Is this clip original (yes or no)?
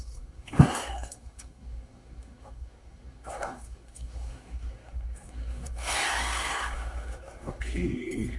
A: no